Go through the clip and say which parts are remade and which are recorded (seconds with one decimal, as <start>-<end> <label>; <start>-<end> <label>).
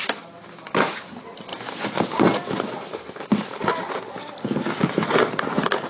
0.0-5.9 recorded